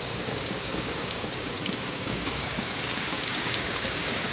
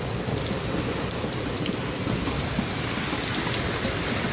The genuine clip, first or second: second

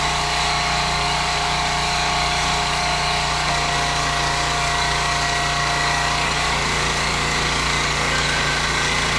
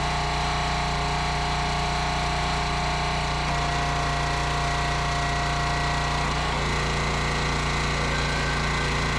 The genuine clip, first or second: second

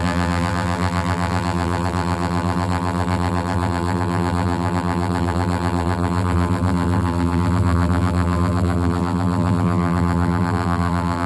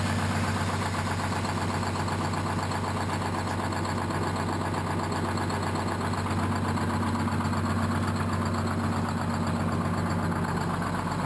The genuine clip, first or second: second